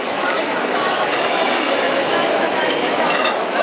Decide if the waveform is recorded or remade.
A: remade